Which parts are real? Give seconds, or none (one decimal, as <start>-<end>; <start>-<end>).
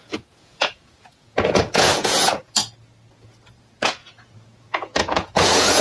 2.4-3.1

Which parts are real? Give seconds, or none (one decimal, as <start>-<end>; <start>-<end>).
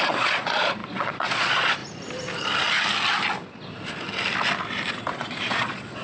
1.8-5.1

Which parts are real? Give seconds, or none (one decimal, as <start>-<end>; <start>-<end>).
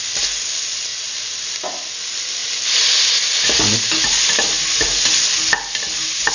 0.0-0.9; 1.9-6.3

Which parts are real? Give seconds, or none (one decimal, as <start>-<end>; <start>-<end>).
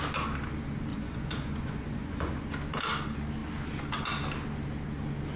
0.0-0.9; 2.4-5.4